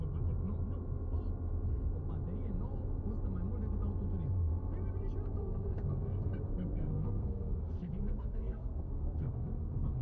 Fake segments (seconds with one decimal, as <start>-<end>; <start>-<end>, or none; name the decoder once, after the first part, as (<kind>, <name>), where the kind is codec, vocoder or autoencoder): 5.4-10.0 (codec, SNAC)